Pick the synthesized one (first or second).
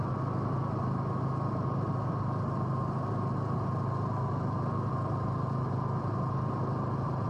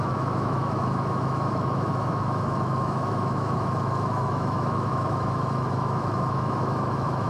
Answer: second